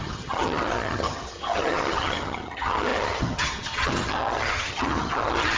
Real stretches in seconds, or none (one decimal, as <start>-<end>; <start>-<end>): none